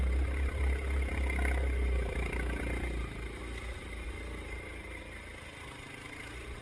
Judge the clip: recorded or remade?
recorded